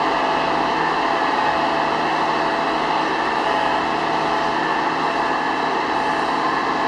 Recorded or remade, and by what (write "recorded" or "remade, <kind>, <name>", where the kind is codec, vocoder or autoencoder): recorded